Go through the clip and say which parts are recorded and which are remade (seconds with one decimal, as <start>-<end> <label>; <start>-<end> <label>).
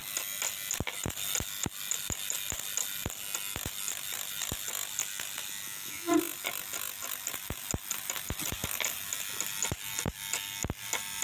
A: 0.0-11.2 recorded